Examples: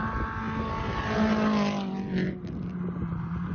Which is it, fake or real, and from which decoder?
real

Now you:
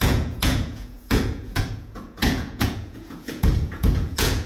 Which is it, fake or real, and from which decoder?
fake, vocoder, Vocos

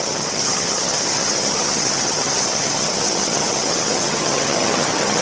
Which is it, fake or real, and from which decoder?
fake, vocoder, HiFi-GAN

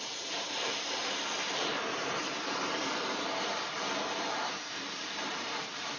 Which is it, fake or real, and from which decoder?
fake, vocoder, BigVGAN v2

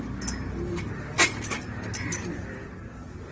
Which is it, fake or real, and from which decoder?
real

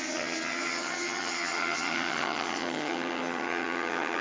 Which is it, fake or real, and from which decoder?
fake, vocoder, HiFi-GAN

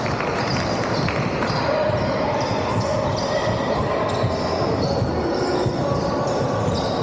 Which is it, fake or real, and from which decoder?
real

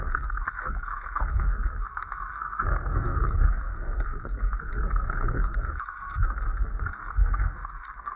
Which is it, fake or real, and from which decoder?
fake, codec, SNAC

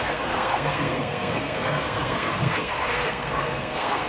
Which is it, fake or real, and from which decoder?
fake, codec, SNAC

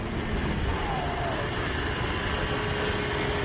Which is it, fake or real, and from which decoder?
real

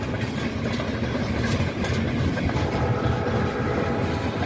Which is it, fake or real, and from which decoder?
real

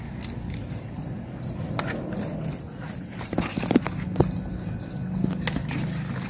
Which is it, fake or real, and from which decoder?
real